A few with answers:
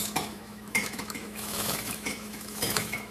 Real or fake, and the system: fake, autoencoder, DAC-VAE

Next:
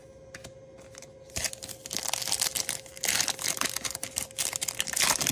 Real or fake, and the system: real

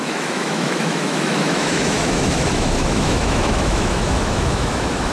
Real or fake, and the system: fake, autoencoder, DAC-VAE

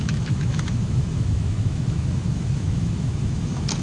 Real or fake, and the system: fake, autoencoder, DAC-VAE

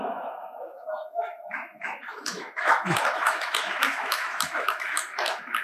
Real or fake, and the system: fake, autoencoder, DAC-VAE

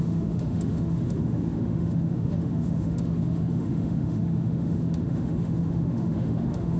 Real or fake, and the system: fake, autoencoder, DAC-VAE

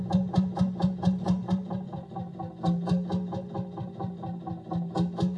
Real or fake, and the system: real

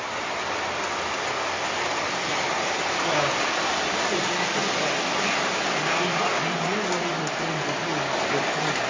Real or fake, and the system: real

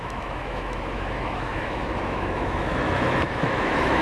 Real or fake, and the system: fake, autoencoder, DAC-VAE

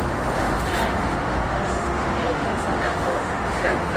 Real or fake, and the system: fake, autoencoder, DAC-VAE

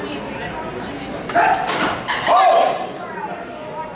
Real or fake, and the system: real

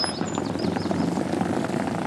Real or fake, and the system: real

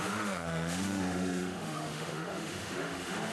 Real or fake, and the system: fake, autoencoder, DAC-VAE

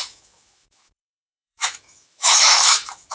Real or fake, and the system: fake, autoencoder, DAC-VAE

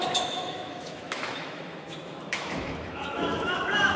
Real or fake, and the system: fake, autoencoder, DAC-VAE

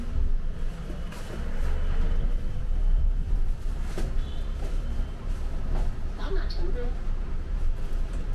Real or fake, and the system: real